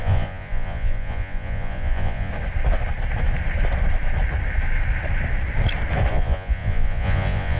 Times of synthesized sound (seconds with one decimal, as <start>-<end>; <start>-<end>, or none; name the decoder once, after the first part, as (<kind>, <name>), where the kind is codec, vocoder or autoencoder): 0.0-2.3 (vocoder, Vocos); 6.1-7.6